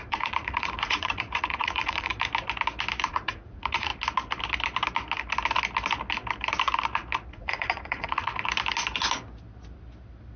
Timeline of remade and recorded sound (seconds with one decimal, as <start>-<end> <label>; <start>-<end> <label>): 0.0-2.1 remade; 2.1-3.1 recorded; 3.1-3.9 remade; 3.9-7.3 recorded; 7.3-8.3 remade; 8.3-10.4 recorded